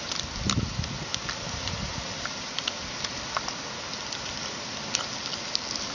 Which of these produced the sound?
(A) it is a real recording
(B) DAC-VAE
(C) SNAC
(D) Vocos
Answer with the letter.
A